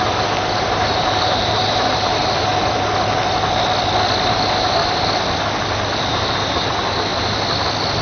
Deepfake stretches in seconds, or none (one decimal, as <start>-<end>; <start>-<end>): 0.0-2.5; 5.9-7.1